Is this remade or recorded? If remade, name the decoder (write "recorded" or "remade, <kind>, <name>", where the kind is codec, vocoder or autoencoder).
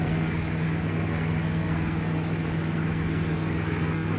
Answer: remade, codec, SNAC